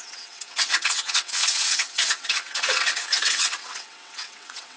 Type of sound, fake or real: fake